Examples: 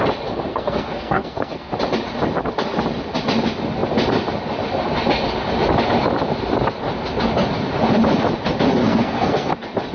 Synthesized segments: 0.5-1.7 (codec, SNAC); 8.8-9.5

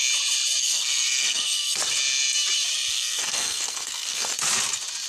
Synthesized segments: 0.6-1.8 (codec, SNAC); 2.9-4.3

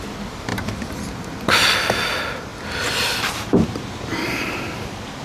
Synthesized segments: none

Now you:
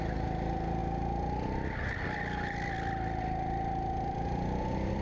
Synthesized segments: none

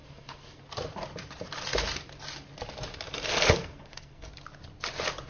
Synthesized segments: 0.0-0.6 (codec, SNAC); 3.3-4.3